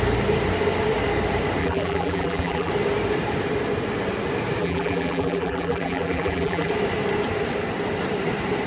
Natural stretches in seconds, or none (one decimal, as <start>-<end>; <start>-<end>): 0.0-1.6; 2.7-4.6; 6.7-8.7